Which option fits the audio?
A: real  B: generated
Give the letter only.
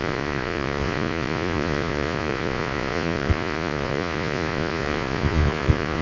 B